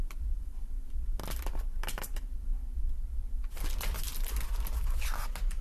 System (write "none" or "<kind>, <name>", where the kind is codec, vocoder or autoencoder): none